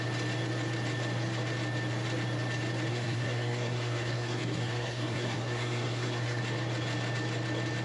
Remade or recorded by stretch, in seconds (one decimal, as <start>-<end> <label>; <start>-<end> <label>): 0.0-2.9 recorded; 2.9-6.4 remade; 6.4-7.8 recorded